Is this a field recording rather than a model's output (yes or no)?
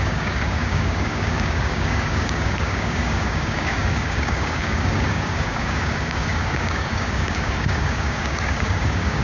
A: no